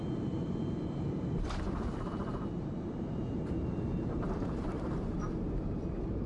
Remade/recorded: remade